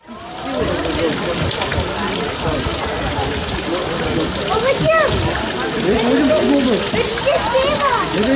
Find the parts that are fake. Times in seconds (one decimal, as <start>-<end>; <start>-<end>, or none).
none